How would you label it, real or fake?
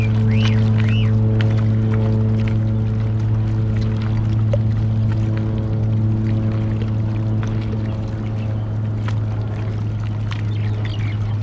real